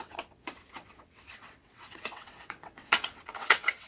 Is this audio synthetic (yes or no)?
yes